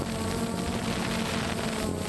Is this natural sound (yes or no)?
yes